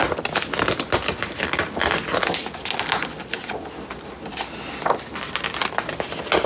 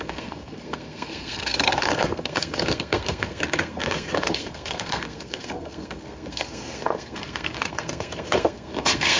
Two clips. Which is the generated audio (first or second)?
second